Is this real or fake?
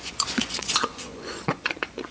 fake